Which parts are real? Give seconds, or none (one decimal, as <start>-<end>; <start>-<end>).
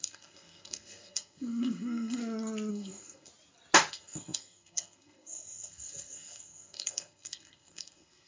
2.2-2.7; 3.3-3.9